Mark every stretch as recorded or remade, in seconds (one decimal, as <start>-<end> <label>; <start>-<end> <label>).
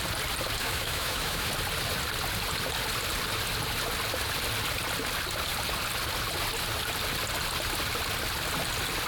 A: 0.0-0.6 recorded; 0.6-1.5 remade; 1.5-9.1 recorded